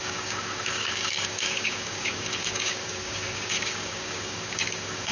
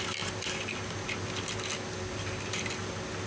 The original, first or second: second